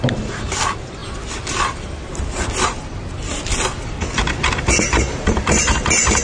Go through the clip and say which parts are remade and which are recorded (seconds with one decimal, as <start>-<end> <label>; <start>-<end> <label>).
0.0-6.2 recorded

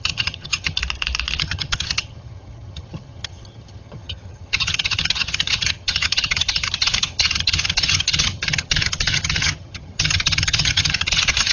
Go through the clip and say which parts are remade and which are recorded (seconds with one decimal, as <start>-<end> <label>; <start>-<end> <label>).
0.0-0.8 remade; 0.8-1.4 recorded; 1.4-11.5 remade

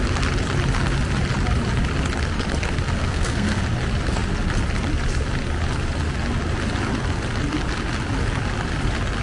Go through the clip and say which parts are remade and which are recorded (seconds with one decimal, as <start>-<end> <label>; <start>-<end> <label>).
0.0-3.0 recorded; 3.0-3.6 remade; 3.6-9.2 recorded

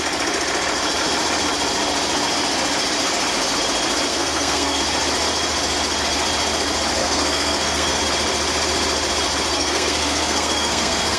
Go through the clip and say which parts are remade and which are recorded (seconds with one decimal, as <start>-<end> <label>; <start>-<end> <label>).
0.0-4.1 recorded; 4.1-4.8 remade; 4.8-7.0 recorded; 7.0-8.0 remade; 8.0-9.5 recorded; 9.5-11.2 remade